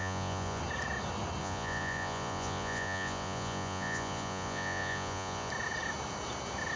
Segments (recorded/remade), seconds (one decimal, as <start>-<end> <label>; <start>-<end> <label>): 0.0-0.6 remade; 0.6-1.4 recorded; 1.4-5.5 remade; 5.5-6.8 recorded